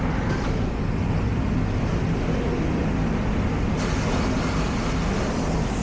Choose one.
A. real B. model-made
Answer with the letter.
A